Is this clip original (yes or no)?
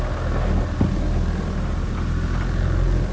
yes